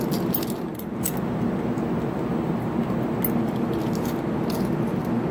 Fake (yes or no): no